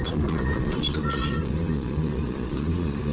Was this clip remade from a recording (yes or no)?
yes